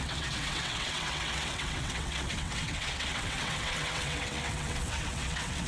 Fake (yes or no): yes